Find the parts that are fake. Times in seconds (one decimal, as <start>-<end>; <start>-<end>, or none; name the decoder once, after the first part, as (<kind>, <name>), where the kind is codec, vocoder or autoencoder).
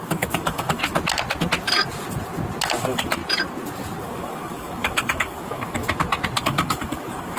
0.0-0.8 (codec, DAC); 2.8-3.2; 4.0-5.8; 6.4-7.4